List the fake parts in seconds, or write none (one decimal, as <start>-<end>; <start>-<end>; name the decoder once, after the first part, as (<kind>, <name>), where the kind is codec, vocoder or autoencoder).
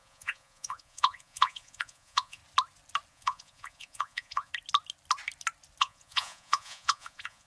0.0-2.4 (vocoder, Vocos); 3.1-4.5; 5.8-7.5